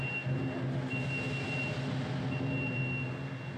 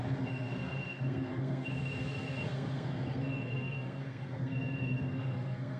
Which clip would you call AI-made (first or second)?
second